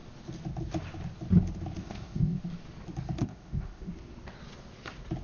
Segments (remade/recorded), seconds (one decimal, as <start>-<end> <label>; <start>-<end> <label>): 0.0-1.8 recorded; 1.8-2.4 remade; 2.4-3.2 recorded; 3.2-3.9 remade; 3.9-5.2 recorded